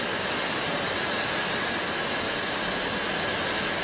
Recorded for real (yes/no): yes